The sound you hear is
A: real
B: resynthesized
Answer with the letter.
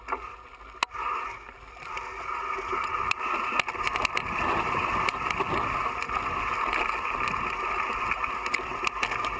A